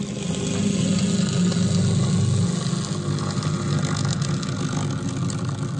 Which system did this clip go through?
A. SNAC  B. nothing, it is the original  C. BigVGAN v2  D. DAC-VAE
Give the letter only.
B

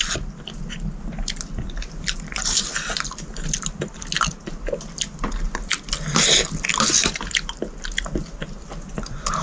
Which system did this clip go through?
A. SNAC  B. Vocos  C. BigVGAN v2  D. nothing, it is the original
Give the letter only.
D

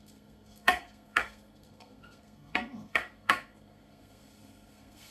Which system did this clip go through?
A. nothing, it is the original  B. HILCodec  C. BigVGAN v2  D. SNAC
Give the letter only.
D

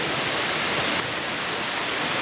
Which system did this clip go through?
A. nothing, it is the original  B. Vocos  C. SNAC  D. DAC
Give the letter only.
A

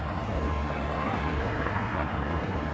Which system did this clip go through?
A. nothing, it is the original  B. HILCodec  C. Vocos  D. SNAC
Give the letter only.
D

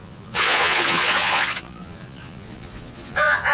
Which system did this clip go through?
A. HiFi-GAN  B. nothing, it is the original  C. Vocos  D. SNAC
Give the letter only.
C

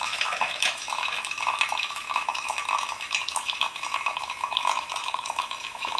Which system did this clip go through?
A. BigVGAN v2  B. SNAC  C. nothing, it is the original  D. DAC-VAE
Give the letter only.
D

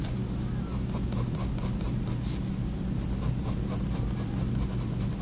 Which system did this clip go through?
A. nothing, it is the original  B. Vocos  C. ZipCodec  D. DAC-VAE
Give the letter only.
A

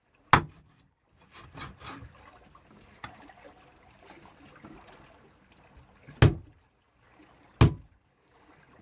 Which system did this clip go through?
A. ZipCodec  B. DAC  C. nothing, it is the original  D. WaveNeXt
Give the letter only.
C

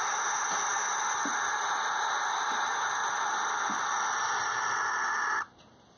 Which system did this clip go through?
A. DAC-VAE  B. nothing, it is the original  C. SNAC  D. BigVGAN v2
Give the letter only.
B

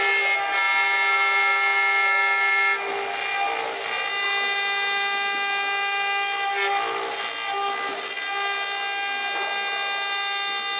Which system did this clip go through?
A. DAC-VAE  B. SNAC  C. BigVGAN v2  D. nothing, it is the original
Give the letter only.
D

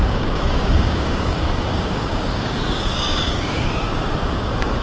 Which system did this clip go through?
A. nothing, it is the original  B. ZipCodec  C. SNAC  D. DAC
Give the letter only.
D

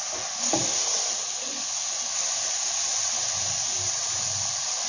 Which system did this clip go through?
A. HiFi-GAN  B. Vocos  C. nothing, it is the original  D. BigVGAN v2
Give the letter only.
C